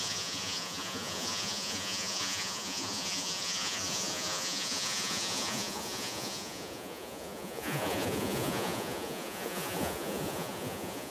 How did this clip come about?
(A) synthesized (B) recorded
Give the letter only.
A